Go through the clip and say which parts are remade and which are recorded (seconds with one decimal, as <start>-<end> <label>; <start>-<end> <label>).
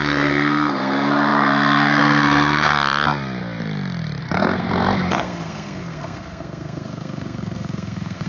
0.0-2.7 remade; 2.7-4.2 recorded; 4.2-8.3 remade